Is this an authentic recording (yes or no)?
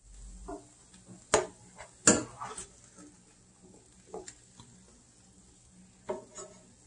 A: yes